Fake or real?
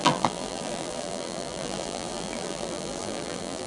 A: fake